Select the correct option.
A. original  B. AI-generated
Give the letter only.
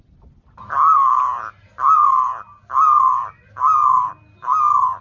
A